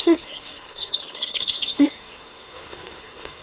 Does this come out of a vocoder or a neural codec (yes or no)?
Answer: yes